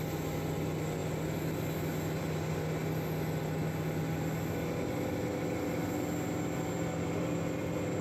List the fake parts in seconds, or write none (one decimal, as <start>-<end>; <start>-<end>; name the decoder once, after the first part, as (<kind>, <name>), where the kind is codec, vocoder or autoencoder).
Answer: none